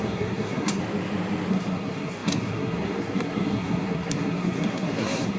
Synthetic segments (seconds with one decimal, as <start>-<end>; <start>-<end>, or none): 0.0-0.8; 1.5-5.4